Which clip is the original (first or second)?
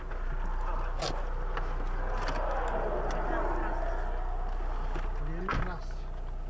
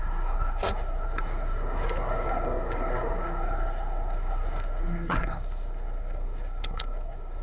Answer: first